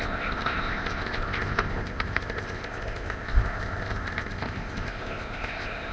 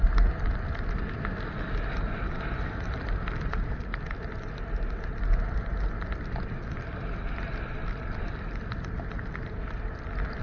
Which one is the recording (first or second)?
second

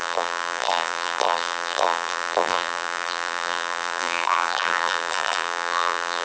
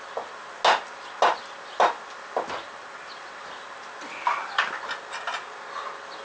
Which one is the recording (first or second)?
second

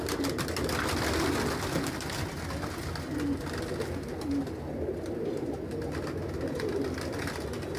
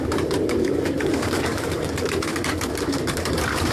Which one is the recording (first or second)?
first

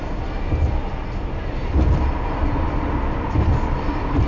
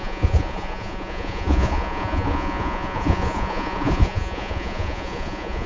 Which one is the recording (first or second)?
first